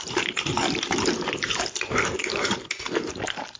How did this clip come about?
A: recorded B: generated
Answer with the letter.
B